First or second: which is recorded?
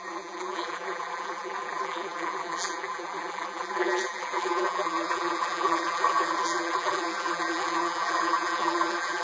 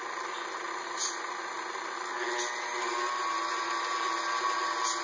second